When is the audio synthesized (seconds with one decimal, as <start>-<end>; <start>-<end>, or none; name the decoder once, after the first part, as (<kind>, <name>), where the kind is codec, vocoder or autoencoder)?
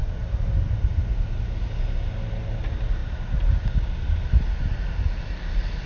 none